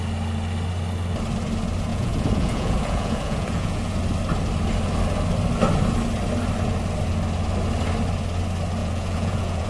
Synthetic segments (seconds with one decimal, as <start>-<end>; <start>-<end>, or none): 1.9-4.0; 8.8-9.7